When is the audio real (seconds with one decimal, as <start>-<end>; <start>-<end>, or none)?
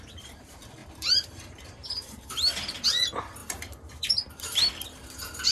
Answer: 0.0-0.8; 2.8-3.4; 3.9-5.5